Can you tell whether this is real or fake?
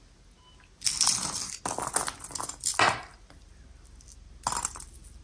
real